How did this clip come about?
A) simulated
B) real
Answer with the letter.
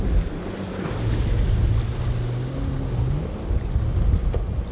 B